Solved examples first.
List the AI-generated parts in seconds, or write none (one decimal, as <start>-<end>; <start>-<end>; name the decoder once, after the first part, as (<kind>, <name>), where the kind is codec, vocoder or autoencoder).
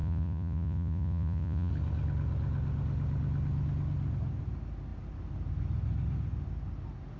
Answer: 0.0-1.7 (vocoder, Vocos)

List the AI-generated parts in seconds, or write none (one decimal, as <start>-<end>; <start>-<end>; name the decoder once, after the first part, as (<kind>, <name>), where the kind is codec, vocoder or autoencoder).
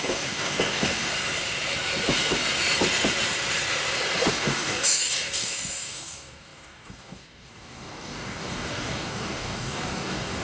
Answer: 0.0-1.1 (codec, DAC); 4.3-10.4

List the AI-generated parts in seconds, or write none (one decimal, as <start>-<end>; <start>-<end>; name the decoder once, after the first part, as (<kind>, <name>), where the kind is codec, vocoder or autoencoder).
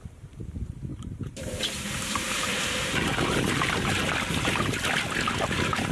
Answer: 0.9-3.9 (vocoder, BigVGAN v2)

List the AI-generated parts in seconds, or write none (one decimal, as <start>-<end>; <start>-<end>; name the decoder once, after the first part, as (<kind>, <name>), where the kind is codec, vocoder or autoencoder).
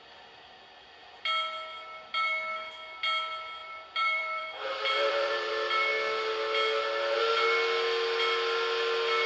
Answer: 3.6-5.5 (vocoder, BigVGAN v2)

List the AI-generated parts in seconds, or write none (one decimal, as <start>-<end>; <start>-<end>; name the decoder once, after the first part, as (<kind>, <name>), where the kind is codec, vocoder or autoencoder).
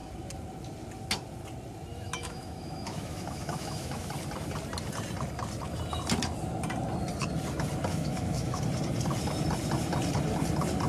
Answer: 1.9-4.1 (autoencoder, DAC-VAE); 7.9-8.6